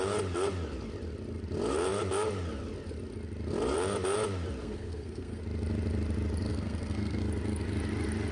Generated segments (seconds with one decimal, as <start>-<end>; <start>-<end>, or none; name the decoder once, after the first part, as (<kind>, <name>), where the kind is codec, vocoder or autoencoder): 4.6-5.4 (codec, SNAC); 6.5-7.2

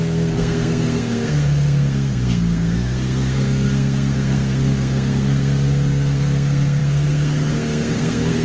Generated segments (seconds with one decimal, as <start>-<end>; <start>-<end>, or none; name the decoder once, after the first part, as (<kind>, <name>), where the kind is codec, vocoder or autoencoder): 0.0-8.4 (codec, SNAC)

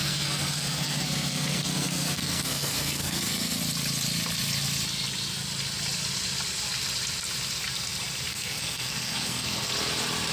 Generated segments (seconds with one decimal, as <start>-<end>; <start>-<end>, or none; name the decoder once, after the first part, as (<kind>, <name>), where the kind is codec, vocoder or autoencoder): 0.0-3.6 (codec, SNAC); 8.3-9.7